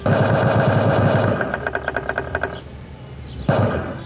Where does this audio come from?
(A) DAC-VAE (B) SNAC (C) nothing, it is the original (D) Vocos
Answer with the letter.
C